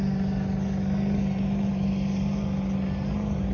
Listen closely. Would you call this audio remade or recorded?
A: recorded